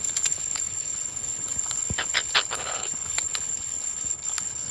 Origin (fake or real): fake